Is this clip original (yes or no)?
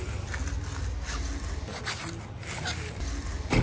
yes